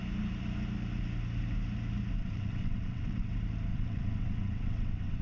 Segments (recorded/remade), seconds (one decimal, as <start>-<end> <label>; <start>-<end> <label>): 0.0-2.2 recorded; 2.2-3.3 remade; 3.3-3.7 recorded; 3.7-5.2 remade